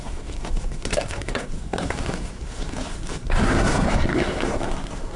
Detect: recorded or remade remade